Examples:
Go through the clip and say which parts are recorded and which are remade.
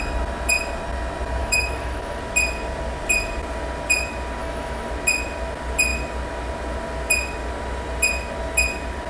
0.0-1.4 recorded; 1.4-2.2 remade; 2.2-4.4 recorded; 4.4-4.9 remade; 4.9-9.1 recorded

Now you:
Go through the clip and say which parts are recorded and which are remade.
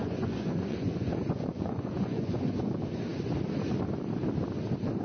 0.0-2.7 remade; 2.7-5.0 recorded